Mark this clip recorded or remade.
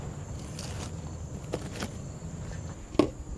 recorded